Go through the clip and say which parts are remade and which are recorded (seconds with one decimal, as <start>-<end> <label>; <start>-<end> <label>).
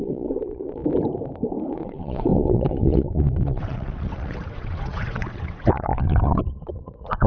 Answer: 0.0-0.8 remade; 0.8-1.7 recorded; 1.7-7.3 remade